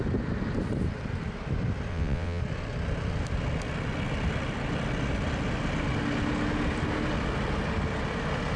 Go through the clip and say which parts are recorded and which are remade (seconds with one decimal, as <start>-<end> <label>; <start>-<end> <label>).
0.0-1.9 recorded; 1.9-2.4 remade; 2.4-8.6 recorded